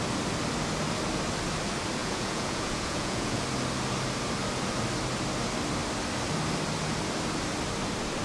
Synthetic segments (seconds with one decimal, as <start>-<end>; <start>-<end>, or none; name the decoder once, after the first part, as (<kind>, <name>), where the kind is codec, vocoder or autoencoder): 2.0-3.4 (vocoder, Vocos)